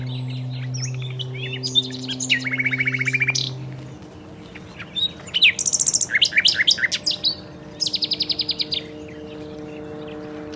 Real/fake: real